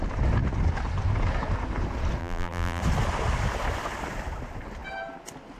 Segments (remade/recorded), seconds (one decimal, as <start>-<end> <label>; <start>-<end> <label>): 0.0-2.2 recorded; 2.2-2.8 remade; 2.8-5.6 recorded